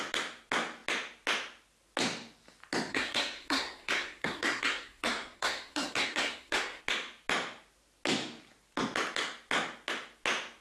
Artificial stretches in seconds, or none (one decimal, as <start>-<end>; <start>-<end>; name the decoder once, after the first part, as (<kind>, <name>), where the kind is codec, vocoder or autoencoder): 2.9-6.8 (codec, SNAC)